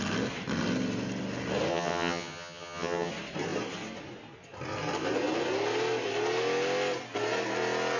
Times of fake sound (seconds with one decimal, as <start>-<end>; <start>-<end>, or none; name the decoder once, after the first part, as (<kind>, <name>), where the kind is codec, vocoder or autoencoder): 1.7-3.1 (vocoder, HiFi-GAN)